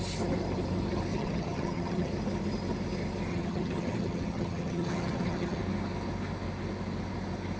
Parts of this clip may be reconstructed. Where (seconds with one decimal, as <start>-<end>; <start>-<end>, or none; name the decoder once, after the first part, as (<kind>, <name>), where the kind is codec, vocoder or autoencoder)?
1.1-2.1 (vocoder, HiFi-GAN); 3.3-5.6